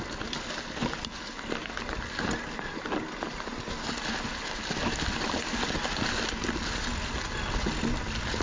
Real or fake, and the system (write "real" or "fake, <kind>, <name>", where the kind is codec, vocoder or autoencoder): real